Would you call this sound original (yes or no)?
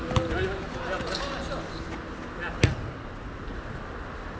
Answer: yes